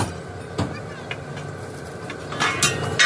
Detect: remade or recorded recorded